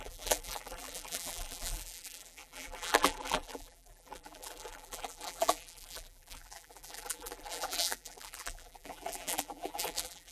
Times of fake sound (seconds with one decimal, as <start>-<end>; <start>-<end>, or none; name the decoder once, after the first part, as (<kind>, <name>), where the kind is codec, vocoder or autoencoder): 0.0-10.3 (vocoder, BigVGAN v2)